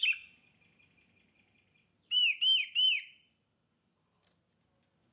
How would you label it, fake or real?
real